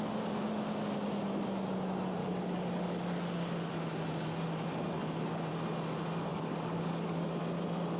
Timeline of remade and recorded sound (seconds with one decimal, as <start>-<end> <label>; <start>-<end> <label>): 0.0-2.2 recorded; 2.2-3.7 remade; 3.7-5.0 recorded; 5.0-5.5 remade; 5.5-6.3 recorded; 6.3-7.4 remade; 7.4-8.0 recorded